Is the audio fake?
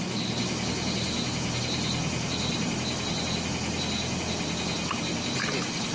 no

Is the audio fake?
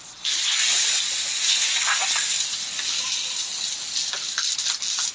no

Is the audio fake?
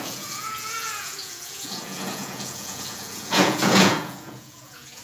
yes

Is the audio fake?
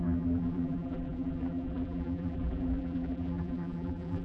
yes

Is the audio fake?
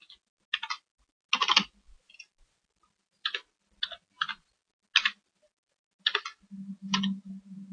no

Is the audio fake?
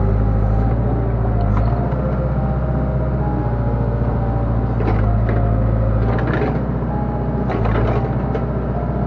no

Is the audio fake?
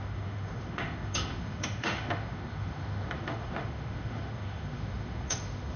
yes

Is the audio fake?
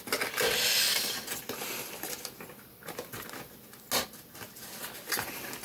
no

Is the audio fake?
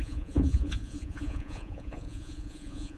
yes